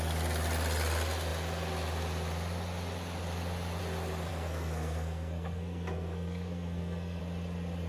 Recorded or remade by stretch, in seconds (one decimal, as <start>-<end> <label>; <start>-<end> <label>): 0.0-4.3 recorded; 4.3-7.2 remade; 7.2-7.9 recorded